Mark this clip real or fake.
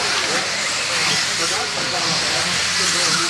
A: real